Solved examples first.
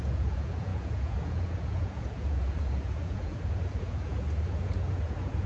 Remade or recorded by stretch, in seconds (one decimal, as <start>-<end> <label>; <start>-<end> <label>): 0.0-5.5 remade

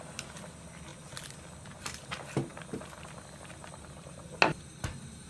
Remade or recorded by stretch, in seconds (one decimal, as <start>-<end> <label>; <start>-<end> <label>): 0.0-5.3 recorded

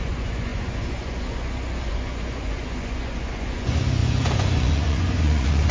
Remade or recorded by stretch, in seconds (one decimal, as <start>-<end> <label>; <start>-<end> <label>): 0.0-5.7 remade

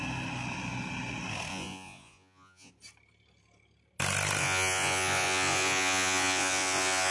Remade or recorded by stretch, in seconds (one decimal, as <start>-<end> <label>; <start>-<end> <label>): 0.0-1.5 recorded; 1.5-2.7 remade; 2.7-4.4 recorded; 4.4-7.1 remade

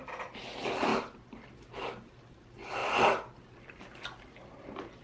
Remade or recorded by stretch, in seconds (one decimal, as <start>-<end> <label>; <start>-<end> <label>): 0.0-5.0 recorded

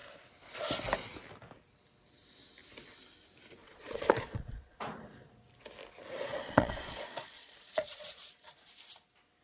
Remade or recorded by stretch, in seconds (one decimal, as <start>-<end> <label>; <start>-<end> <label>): 0.0-3.6 recorded; 3.6-4.8 remade; 4.8-6.3 recorded; 6.3-8.7 remade; 8.7-9.4 recorded

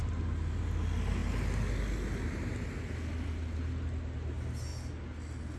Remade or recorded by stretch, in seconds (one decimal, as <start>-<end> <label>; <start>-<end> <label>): 0.0-5.6 recorded

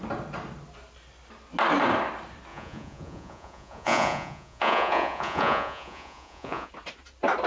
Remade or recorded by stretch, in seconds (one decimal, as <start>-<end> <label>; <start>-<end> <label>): 0.0-2.5 recorded; 2.5-6.7 remade; 6.7-7.5 recorded